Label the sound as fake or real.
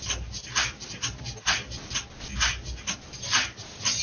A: real